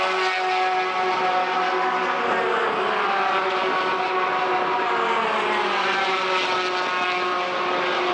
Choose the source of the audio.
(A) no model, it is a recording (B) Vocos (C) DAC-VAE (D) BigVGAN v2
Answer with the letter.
A